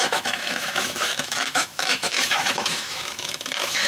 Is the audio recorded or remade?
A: remade